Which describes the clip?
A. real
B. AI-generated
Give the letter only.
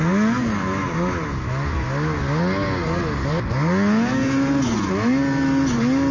A